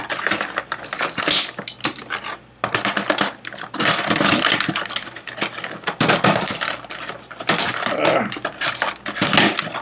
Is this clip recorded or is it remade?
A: recorded